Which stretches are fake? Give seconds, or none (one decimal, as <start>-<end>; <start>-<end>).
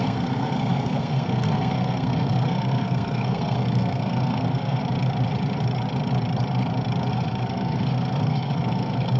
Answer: 0.0-4.8; 7.1-9.2